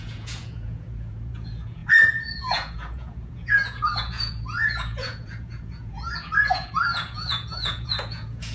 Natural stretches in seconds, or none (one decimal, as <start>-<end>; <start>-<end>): none